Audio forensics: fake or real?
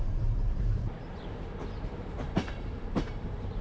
fake